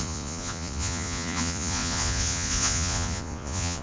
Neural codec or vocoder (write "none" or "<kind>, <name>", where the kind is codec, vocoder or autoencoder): vocoder, Vocos